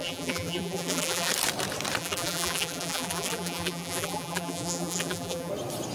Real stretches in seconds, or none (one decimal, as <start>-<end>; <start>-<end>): 1.3-2.0; 5.5-5.9